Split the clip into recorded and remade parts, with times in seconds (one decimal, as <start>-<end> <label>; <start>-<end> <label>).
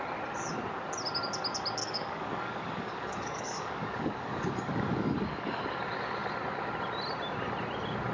0.0-1.8 recorded; 1.8-5.6 remade; 5.6-8.1 recorded